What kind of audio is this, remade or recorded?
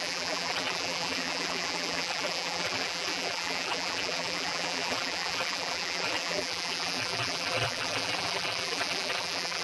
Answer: remade